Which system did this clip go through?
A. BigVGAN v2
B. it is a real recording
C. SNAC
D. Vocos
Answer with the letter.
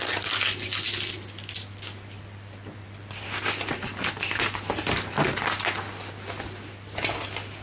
B